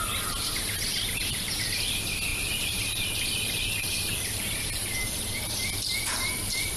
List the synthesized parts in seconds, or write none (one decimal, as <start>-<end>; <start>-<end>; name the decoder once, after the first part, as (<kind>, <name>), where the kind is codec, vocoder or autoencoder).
0.9-1.6 (vocoder, BigVGAN v2); 2.3-6.8